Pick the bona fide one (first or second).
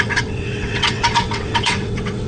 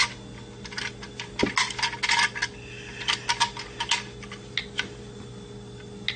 second